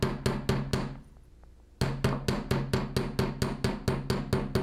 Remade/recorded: recorded